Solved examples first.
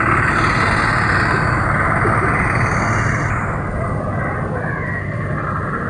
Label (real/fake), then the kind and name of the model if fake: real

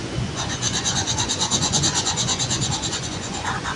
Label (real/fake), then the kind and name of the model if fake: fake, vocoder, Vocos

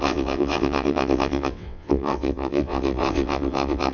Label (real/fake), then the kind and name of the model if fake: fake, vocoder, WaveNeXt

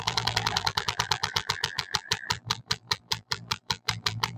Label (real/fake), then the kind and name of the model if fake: fake, vocoder, BigVGAN v2